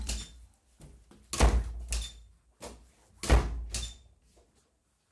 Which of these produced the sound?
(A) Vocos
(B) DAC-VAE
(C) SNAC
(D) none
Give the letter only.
D